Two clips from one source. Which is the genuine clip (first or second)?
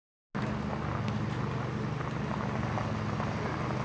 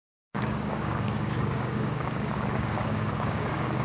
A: first